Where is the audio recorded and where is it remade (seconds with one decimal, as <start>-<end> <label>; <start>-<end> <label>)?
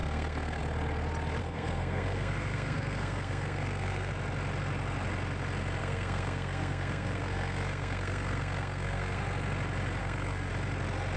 0.0-0.6 remade; 0.6-1.4 recorded; 1.4-4.1 remade; 4.1-5.8 recorded; 5.8-9.2 remade; 9.2-10.0 recorded; 10.0-10.5 remade; 10.5-11.2 recorded